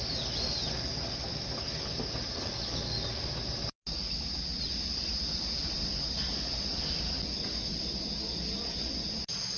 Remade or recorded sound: recorded